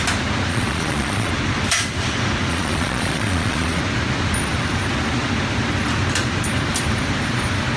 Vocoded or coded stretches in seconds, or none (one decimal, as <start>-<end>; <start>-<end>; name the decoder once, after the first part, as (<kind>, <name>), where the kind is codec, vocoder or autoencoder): 0.5-1.3 (vocoder, Vocos); 2.5-3.8